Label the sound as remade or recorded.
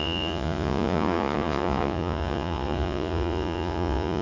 remade